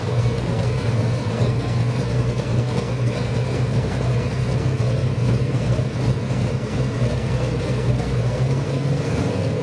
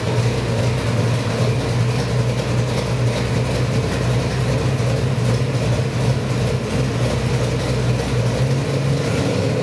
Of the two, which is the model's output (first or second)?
first